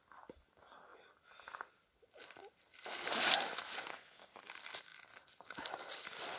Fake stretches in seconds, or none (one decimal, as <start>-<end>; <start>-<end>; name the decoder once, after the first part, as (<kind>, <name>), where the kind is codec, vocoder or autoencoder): 3.9-4.5 (codec, SNAC)